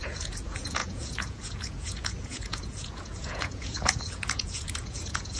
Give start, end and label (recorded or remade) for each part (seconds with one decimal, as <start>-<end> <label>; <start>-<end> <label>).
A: 0.0-5.4 remade